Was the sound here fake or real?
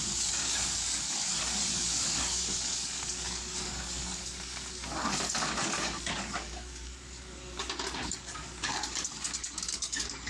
fake